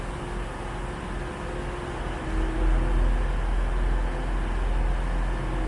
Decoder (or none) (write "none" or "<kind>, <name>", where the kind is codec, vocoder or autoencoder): none